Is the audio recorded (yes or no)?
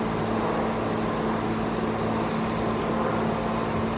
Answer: yes